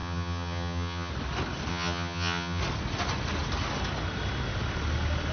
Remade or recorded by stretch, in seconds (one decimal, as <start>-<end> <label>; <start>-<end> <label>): 0.0-1.1 remade; 1.1-1.7 recorded; 1.7-2.6 remade; 2.6-5.3 recorded